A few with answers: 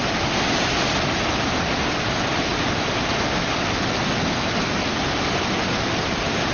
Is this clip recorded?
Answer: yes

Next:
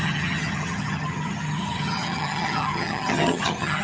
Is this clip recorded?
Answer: no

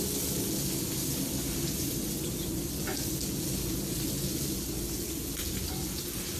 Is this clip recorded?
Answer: yes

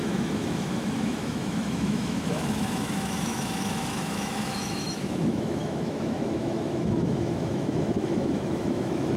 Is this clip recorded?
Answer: no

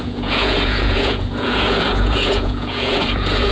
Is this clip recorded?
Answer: no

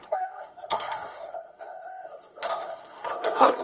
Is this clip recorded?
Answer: no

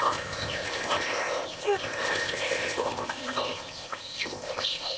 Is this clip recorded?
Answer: no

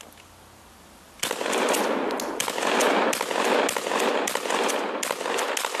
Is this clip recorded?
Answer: yes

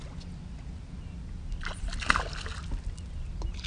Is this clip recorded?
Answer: yes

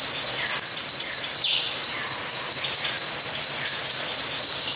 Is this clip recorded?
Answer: yes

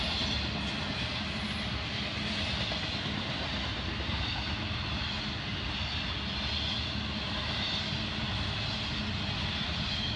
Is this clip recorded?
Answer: yes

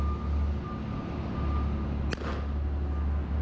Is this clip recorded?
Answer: yes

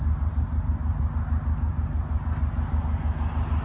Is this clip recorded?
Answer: yes